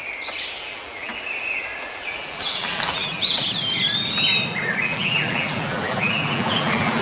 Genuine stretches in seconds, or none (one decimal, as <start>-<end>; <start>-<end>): 0.0-0.6; 1.1-1.8; 3.5-4.8